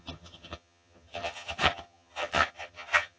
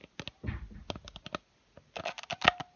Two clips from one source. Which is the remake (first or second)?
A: first